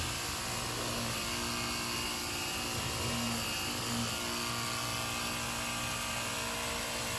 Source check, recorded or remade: recorded